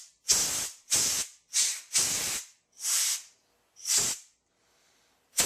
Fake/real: real